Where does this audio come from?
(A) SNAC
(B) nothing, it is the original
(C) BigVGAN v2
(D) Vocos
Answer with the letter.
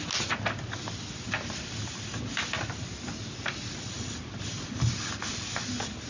B